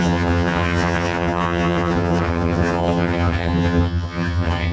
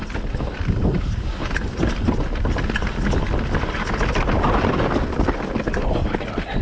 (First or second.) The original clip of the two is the second